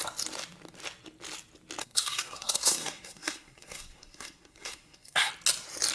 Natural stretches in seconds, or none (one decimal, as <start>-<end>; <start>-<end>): 0.0-1.8; 5.3-5.9

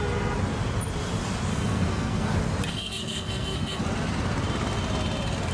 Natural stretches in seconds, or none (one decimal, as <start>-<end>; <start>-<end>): 0.0-1.5; 2.3-2.7; 3.8-5.5

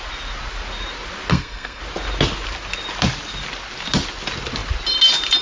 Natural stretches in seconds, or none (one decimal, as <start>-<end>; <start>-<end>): 0.0-1.3; 1.8-5.4